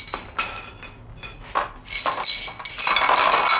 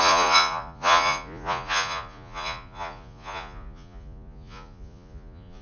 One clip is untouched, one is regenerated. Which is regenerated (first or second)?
second